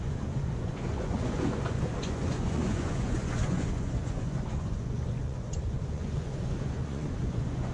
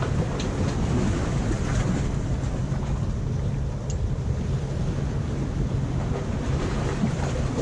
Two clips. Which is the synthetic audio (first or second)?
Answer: first